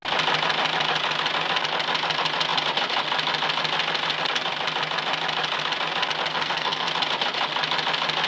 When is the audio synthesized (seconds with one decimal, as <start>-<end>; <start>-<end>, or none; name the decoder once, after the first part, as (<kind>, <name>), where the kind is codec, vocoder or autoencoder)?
6.3-6.9 (codec, SNAC)